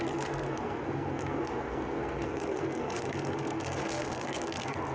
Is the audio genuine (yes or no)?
no